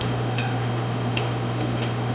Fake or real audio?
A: fake